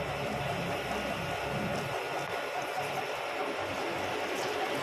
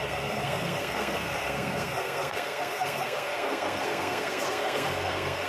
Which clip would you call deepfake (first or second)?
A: second